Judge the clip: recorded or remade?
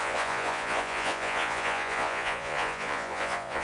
remade